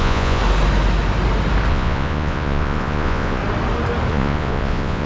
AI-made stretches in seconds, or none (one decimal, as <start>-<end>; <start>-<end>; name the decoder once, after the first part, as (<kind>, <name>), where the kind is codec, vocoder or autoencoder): 0.0-0.4 (vocoder, Vocos); 1.7-3.4; 4.1-5.1